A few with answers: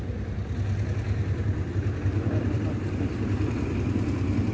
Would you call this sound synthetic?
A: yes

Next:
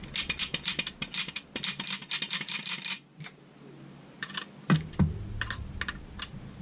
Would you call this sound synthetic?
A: no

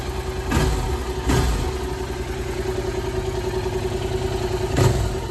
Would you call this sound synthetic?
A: no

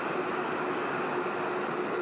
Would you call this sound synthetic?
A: no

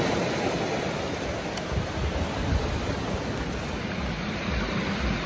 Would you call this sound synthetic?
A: no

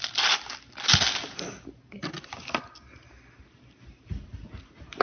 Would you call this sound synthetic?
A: no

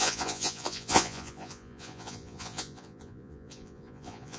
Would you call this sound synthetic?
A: yes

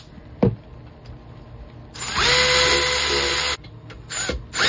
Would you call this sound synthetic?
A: no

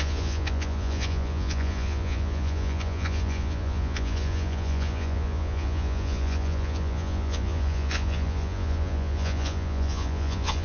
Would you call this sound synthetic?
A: yes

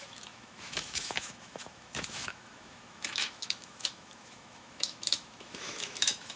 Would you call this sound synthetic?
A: yes